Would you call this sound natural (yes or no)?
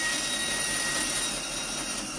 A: yes